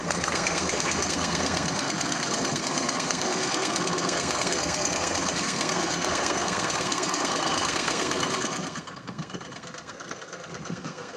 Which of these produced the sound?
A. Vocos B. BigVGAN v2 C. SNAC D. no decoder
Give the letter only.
C